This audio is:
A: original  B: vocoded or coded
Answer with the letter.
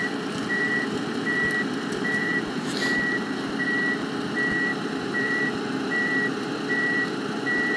B